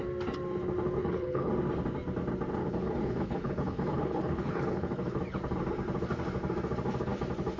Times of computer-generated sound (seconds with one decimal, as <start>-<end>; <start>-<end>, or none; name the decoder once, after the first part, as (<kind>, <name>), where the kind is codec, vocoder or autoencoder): 1.0-1.5 (codec, HILCodec); 2.6-5.2